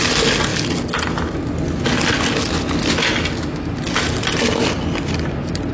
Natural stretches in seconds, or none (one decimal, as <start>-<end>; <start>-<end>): 0.0-5.7